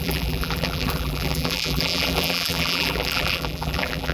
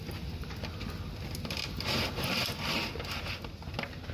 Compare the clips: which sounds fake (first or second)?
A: first